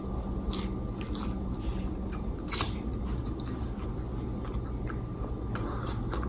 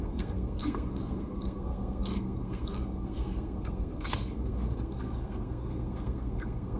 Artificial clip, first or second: second